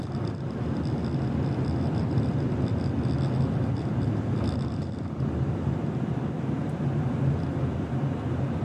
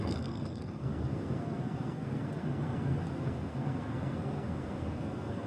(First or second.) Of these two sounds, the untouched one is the first